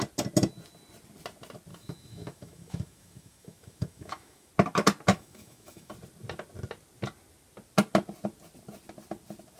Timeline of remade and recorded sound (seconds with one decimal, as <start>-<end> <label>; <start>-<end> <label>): 0.0-1.7 recorded; 1.7-4.5 remade; 4.5-5.1 recorded; 5.1-5.9 remade; 5.9-9.6 recorded